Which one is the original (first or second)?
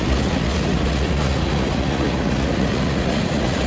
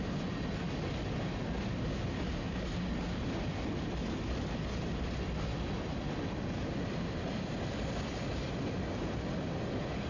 second